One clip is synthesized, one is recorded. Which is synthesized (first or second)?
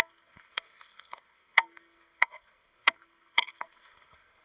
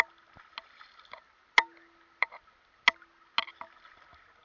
first